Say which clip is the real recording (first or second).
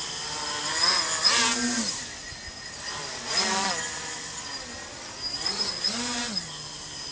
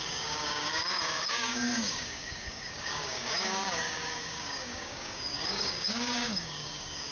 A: first